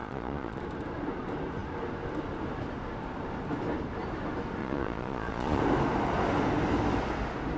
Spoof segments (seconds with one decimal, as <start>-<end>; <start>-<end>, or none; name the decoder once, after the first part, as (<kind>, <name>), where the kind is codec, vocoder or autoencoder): 0.0-0.6 (vocoder, Vocos); 4.6-5.6